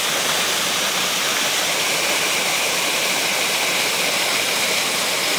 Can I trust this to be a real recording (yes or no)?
yes